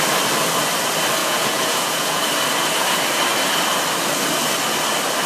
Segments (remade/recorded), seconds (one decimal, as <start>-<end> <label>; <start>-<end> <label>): 0.0-1.2 recorded; 1.2-2.2 remade; 2.2-5.3 recorded